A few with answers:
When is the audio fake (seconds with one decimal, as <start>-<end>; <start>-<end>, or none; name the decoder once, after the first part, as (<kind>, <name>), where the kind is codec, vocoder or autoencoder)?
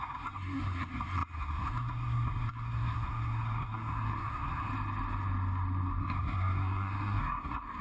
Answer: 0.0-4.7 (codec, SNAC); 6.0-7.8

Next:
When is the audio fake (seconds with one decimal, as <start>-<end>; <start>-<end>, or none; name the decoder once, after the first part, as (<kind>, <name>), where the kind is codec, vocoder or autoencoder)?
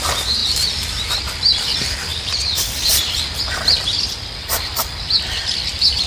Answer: none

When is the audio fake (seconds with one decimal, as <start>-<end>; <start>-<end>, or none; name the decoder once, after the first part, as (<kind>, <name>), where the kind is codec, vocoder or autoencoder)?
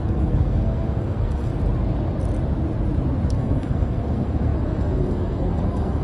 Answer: 0.0-1.5 (codec, SNAC); 3.3-6.0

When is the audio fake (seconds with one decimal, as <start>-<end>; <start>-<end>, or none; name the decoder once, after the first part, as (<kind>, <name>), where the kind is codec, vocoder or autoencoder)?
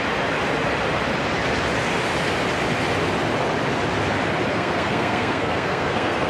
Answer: 4.5-6.3 (codec, SNAC)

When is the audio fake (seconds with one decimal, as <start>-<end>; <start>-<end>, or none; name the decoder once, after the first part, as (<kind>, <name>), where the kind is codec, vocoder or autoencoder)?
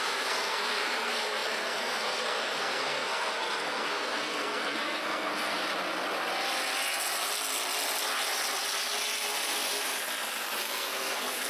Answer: 0.0-5.6 (codec, SNAC); 10.6-11.5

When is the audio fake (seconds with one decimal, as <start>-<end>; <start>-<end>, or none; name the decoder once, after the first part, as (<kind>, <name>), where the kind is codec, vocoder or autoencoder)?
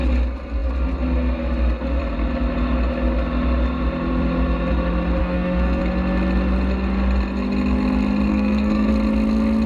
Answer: 5.2-5.8 (codec, SNAC); 8.3-8.9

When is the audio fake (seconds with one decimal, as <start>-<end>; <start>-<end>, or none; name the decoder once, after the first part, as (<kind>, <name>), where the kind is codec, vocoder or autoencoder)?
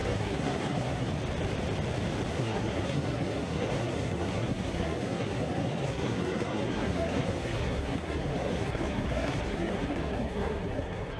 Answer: 0.0-1.1 (codec, SNAC); 2.3-11.2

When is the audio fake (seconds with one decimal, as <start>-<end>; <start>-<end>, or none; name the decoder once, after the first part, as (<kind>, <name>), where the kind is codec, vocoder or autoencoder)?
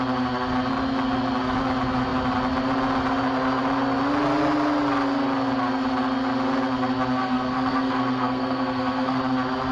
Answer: 7.2-9.2 (codec, SNAC)